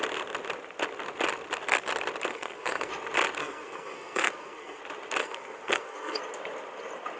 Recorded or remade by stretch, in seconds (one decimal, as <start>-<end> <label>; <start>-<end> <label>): 0.0-2.3 recorded; 2.3-2.9 remade; 2.9-3.4 recorded; 3.4-4.8 remade; 4.8-5.2 recorded; 5.2-6.2 remade; 6.2-7.2 recorded